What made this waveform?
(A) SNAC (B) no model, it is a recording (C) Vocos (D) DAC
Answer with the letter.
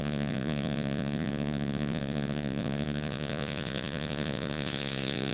C